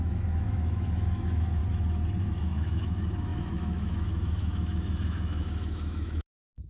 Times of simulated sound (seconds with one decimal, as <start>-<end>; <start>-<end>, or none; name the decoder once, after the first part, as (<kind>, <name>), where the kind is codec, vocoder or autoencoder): 0.0-1.6 (autoencoder, DAC-VAE); 2.2-6.7

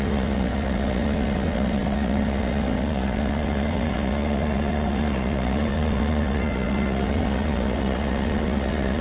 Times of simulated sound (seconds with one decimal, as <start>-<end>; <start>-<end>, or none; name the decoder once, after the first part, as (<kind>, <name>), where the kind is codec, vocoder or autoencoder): 0.0-9.0 (vocoder, WaveNeXt)

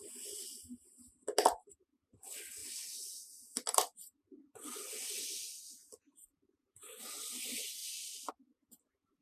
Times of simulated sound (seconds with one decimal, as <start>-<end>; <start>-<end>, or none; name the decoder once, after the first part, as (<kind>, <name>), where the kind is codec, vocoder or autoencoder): none

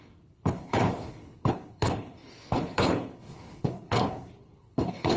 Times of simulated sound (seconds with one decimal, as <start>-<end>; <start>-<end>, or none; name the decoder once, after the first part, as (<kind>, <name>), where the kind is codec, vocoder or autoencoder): 0.0-5.2 (codec, HILCodec)

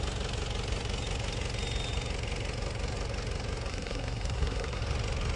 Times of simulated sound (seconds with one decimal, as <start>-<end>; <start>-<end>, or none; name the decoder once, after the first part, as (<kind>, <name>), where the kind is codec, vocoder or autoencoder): 3.7-4.8 (codec, SNAC)

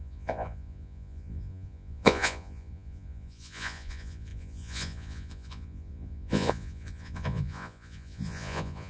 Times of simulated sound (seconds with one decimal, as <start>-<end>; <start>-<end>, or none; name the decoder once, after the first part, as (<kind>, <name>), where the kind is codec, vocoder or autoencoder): 0.0-8.9 (vocoder, Vocos)